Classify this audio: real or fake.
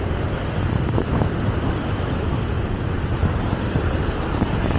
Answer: real